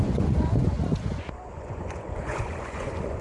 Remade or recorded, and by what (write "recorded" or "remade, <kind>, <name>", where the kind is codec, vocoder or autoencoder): remade, vocoder, Vocos